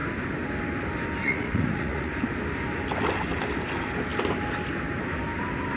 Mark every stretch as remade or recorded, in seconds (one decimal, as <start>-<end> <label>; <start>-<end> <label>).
0.0-1.2 recorded; 1.2-2.1 remade; 2.1-5.8 recorded